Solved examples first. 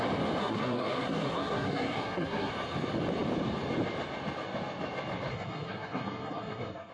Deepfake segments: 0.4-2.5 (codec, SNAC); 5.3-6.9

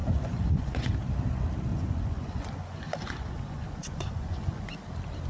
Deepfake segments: 0.0-0.9 (vocoder, Vocos); 1.7-4.8

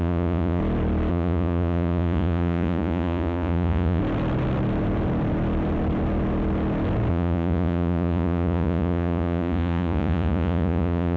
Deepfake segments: 0.0-0.6 (vocoder, Vocos); 1.1-4.0; 7.1-11.2